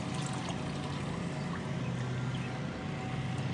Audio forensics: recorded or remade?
recorded